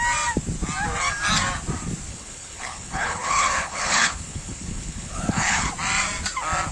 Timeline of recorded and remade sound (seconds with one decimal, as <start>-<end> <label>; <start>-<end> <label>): 0.0-2.1 recorded; 2.1-5.7 remade; 5.7-6.7 recorded